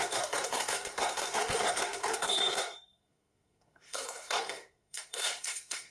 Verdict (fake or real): fake